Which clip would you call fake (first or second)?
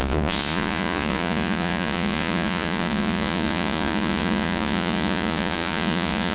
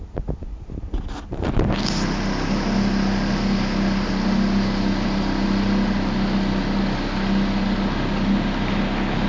first